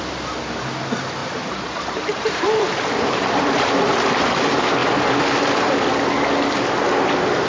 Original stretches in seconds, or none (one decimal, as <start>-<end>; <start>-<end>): 0.0-1.2; 3.8-7.5